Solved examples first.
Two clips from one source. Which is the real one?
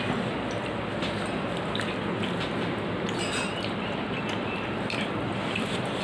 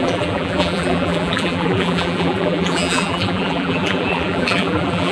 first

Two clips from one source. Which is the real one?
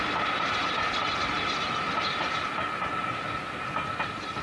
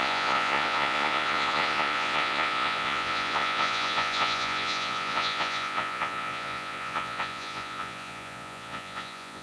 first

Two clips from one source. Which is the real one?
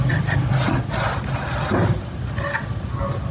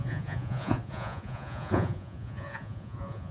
first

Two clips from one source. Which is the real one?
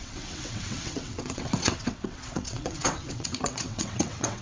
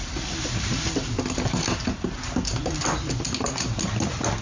second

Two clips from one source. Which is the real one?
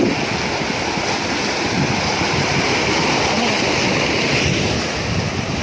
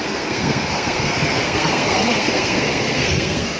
first